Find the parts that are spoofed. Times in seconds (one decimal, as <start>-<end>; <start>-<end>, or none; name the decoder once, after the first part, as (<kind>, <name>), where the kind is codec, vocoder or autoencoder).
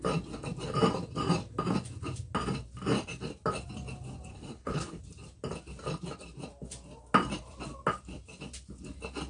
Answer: 4.3-5.0 (codec, HILCodec)